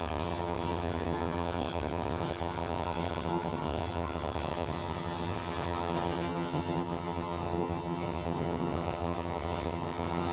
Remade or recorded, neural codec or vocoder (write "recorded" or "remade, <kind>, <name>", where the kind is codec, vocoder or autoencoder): remade, vocoder, HiFi-GAN